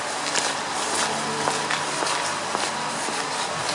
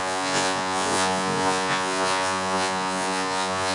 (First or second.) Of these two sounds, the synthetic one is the second